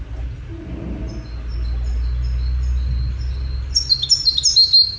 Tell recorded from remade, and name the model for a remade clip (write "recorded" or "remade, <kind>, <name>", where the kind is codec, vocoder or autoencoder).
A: recorded